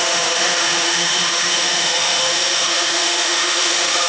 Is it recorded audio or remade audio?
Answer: remade